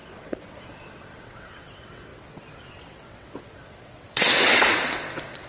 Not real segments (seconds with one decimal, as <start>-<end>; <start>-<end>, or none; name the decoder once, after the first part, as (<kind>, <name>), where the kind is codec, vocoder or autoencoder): 0.0-5.5 (vocoder, WaveNeXt)

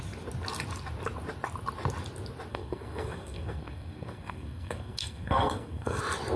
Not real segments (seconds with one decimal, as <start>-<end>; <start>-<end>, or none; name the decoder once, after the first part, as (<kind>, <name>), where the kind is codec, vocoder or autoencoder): 2.5-6.0 (codec, SNAC)

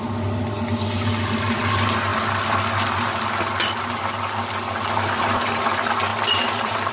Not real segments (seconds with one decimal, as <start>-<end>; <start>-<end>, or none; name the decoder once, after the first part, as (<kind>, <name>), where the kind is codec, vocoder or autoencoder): 6.1-6.9 (vocoder, BigVGAN v2)

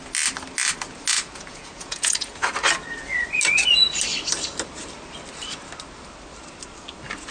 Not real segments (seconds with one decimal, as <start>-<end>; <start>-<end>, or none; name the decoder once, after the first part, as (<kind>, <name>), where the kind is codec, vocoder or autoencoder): 1.1-2.4 (vocoder, Vocos)

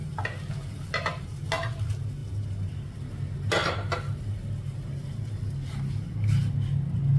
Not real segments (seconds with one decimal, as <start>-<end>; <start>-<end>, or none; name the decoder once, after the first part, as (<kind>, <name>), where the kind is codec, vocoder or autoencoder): none

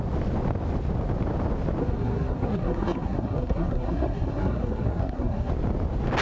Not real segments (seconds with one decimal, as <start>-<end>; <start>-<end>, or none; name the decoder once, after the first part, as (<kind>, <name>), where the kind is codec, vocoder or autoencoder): 1.8-5.5 (codec, SNAC)

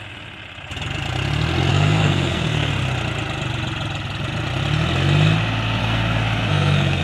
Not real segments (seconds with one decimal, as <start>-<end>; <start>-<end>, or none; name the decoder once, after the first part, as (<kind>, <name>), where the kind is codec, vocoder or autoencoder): 1.7-2.7 (codec, SNAC); 5.8-7.0